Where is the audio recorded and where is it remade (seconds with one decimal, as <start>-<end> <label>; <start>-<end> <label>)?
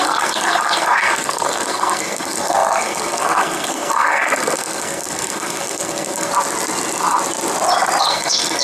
0.0-6.3 remade; 6.3-8.0 recorded; 8.0-8.6 remade